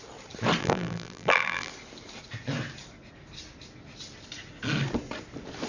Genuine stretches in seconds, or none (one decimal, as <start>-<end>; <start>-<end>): 0.0-0.6; 1.7-5.7